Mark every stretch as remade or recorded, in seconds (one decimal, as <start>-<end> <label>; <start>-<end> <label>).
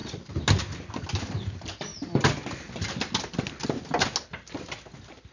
0.0-0.9 recorded; 0.9-1.9 remade; 1.9-5.3 recorded